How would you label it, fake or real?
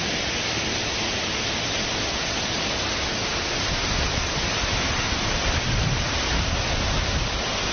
real